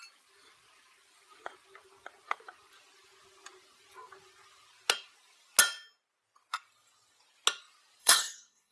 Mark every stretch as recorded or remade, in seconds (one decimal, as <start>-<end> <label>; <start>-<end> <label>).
0.0-8.0 recorded; 8.0-8.7 remade